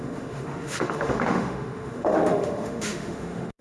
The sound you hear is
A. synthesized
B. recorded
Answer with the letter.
A